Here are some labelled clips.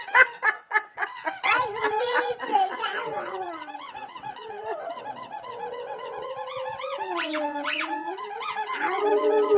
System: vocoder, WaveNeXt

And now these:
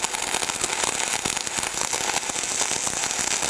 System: none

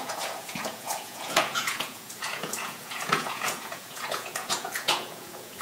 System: vocoder, Vocos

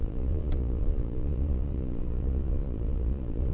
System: vocoder, Vocos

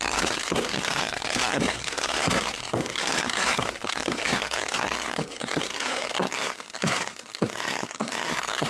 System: codec, SNAC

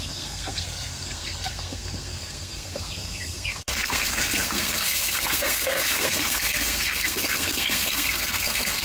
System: codec, SNAC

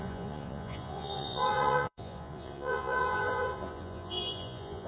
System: vocoder, Vocos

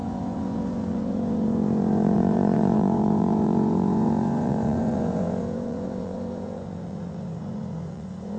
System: vocoder, Vocos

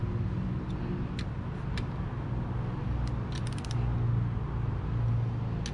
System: none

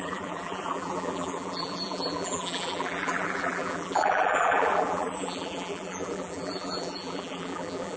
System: vocoder, BigVGAN v2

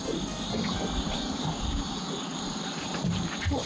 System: none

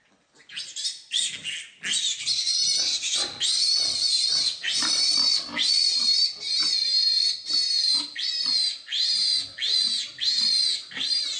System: none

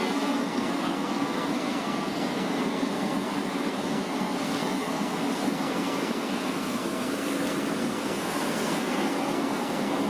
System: codec, SNAC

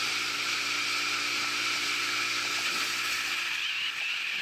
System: none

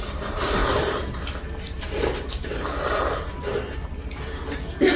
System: vocoder, BigVGAN v2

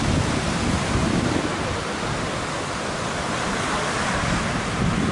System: none